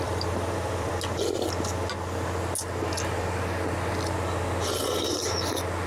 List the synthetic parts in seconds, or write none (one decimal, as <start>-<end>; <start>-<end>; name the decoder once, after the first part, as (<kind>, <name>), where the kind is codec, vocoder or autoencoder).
0.0-0.9 (vocoder, BigVGAN v2)